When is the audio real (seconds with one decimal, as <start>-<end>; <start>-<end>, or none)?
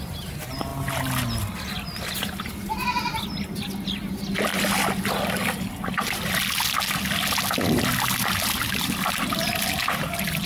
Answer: 0.0-10.5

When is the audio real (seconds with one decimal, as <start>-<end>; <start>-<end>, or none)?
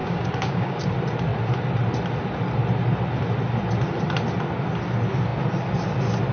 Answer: 0.8-6.3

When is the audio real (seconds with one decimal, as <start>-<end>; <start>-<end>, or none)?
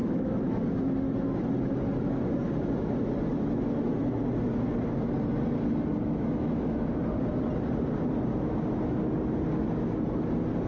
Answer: 1.5-3.3; 4.0-6.0; 7.0-10.7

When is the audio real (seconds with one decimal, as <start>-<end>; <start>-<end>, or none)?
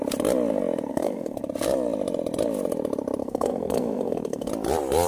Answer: 0.0-0.9; 1.4-3.2; 4.5-5.1